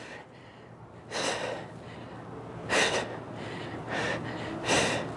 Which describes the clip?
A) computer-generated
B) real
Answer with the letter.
B